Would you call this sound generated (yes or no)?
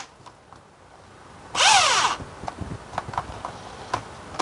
no